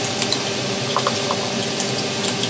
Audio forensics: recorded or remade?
recorded